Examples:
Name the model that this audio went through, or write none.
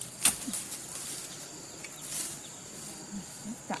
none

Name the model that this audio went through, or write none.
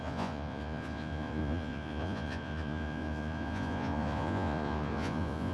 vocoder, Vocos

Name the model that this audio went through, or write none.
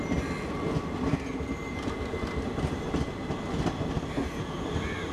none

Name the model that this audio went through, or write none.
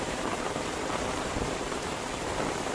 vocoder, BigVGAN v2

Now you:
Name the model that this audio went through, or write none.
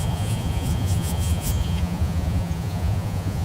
vocoder, Vocos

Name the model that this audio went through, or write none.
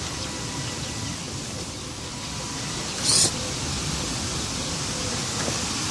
none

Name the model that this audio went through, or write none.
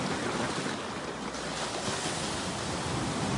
none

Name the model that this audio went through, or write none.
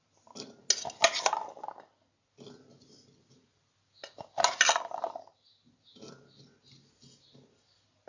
none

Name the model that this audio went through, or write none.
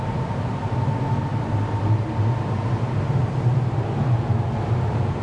none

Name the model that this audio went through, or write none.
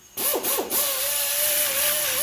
vocoder, BigVGAN v2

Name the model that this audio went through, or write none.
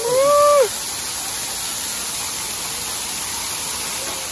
none